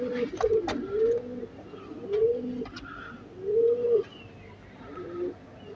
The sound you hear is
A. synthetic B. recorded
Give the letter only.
B